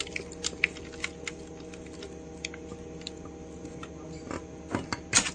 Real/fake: real